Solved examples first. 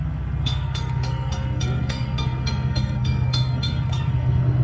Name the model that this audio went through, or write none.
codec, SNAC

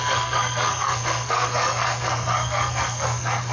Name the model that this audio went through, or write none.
codec, SNAC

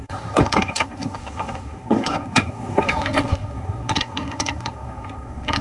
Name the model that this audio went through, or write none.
codec, SNAC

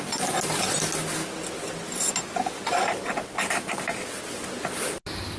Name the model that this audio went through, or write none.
none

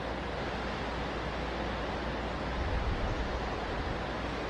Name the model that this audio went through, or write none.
none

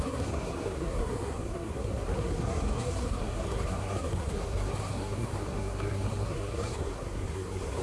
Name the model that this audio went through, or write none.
codec, SNAC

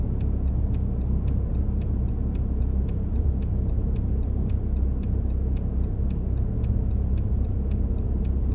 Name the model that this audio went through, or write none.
none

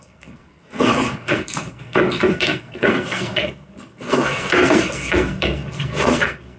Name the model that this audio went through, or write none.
codec, SNAC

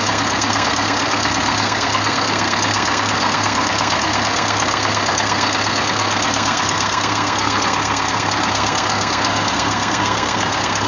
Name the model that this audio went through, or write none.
codec, SNAC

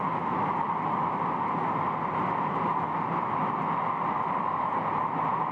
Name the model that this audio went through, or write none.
none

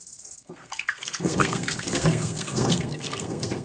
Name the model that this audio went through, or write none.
codec, SNAC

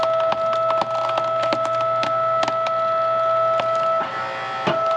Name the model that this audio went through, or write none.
none